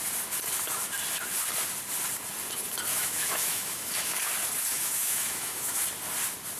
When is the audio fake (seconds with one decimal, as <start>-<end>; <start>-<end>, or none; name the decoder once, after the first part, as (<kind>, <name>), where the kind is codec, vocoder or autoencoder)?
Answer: 2.9-4.2 (autoencoder, DAC-VAE); 4.7-5.8